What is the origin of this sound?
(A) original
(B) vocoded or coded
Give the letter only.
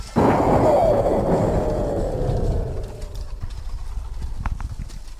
A